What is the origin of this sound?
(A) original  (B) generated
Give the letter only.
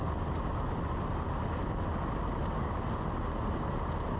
A